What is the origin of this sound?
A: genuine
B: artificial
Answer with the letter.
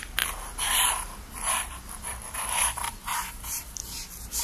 B